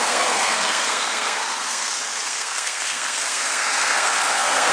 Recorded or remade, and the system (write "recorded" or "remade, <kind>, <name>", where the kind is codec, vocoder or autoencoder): remade, codec, SNAC